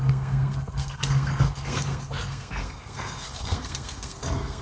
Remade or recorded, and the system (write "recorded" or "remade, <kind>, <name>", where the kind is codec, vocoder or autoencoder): remade, codec, SNAC